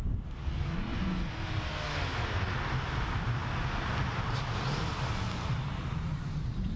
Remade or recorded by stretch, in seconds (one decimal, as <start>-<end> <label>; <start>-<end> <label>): 0.0-6.8 recorded